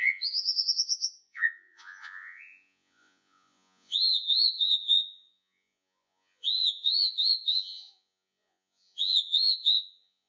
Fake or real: fake